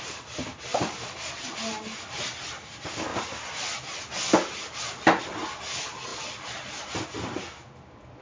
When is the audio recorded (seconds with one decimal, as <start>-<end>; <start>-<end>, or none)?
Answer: 0.0-0.7; 1.3-3.1; 5.2-6.1; 7.0-8.2